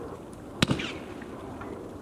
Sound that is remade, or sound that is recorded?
remade